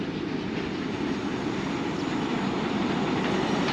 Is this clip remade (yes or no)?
no